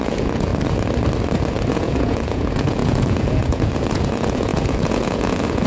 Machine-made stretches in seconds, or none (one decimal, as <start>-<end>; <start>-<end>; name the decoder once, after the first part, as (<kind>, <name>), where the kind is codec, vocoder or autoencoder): 0.0-0.5 (vocoder, Vocos); 1.7-5.7